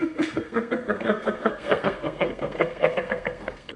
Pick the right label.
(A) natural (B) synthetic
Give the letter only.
B